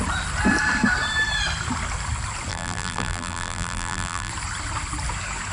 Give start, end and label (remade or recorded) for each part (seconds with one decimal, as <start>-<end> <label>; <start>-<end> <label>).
0.0-2.5 recorded; 2.5-4.3 remade; 4.3-5.5 recorded